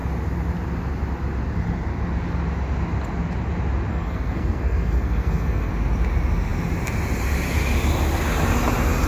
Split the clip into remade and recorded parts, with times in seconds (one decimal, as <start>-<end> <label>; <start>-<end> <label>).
0.0-3.9 recorded; 3.9-5.7 remade; 5.7-9.1 recorded